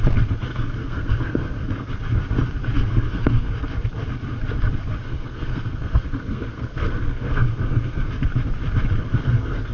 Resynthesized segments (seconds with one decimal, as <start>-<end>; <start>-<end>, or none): 0.5-2.0; 2.9-3.5; 5.0-8.1; 9.0-9.7